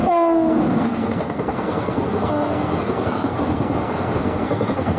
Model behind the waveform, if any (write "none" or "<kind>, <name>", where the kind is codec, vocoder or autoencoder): codec, SNAC